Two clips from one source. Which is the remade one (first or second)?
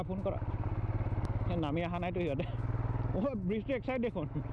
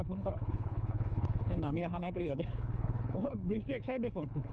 second